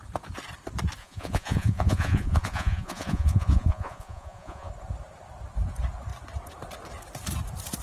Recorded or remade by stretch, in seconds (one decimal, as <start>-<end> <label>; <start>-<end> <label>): 0.0-1.0 recorded; 1.0-4.7 remade; 4.7-7.8 recorded